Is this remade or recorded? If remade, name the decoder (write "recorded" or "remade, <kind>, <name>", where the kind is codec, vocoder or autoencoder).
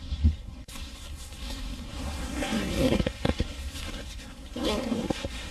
remade, codec, SNAC